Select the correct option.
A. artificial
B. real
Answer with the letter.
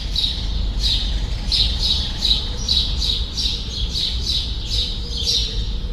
B